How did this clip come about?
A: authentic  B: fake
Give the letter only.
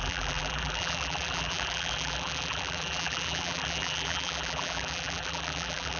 B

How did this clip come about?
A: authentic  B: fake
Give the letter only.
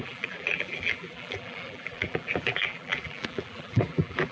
B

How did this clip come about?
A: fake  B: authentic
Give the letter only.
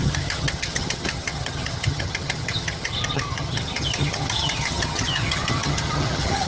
A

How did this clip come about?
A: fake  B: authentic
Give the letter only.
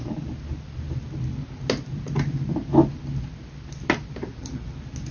B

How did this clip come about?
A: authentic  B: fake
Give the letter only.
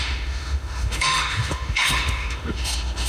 B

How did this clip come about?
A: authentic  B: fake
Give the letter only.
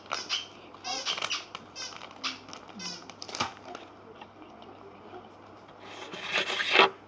A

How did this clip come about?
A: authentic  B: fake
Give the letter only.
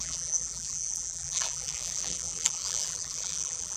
B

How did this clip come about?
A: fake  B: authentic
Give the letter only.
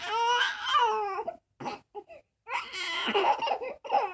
B